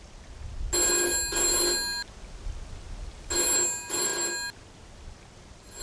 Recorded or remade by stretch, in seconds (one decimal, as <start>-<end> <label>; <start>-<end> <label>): 0.0-5.8 recorded